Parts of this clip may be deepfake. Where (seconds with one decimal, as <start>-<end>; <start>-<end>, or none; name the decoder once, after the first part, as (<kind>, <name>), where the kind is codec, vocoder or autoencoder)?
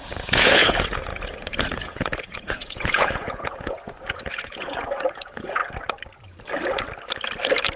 0.0-5.6 (vocoder, Vocos)